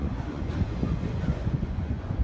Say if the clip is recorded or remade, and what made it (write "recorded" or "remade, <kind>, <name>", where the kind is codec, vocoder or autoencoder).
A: remade, vocoder, Vocos